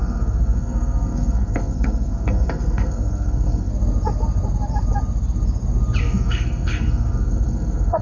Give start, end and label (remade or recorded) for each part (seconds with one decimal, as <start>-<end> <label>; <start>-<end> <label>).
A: 0.0-3.7 remade; 3.7-6.0 recorded; 6.0-8.0 remade